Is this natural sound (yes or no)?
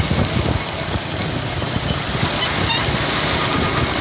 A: yes